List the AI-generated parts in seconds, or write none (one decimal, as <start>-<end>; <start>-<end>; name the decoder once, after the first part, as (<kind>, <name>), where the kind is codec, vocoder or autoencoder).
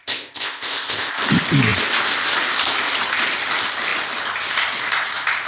0.0-1.2 (codec, ZipCodec)